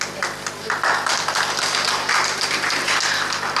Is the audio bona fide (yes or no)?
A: yes